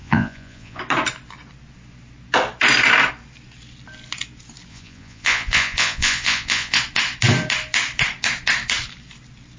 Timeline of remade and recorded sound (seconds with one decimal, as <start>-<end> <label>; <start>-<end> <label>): 0.0-0.8 remade; 0.8-4.7 recorded; 4.7-6.8 remade; 6.8-9.6 recorded